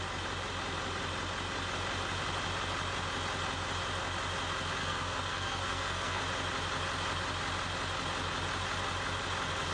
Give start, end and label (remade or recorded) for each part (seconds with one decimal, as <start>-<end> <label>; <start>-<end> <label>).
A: 0.0-4.8 recorded; 4.8-6.2 remade; 6.2-9.7 recorded